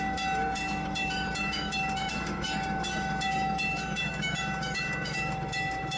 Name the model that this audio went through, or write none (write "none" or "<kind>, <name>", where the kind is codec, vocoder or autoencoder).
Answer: autoencoder, DAC-VAE